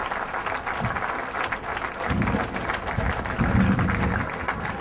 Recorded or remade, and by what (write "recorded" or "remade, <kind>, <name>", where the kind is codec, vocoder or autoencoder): recorded